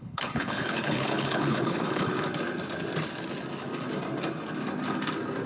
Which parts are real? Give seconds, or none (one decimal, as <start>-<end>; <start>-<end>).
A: 2.1-5.5